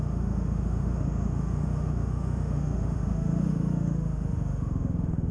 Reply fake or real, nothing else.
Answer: fake